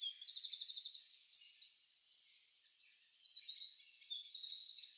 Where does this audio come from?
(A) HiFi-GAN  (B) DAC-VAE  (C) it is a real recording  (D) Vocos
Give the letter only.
C